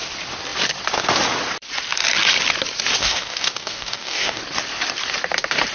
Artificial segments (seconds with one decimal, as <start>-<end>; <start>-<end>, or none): 3.0-4.4